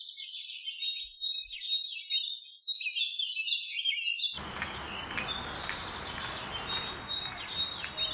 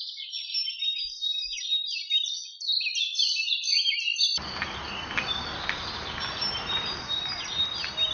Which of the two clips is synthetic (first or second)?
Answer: second